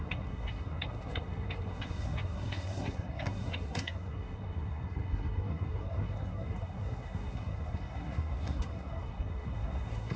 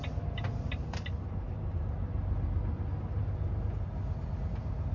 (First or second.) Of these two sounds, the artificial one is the first